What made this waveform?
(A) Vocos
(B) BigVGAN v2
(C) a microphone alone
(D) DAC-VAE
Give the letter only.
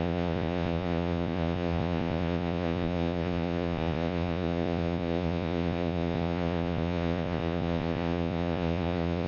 A